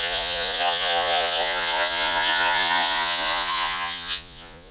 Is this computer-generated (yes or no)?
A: yes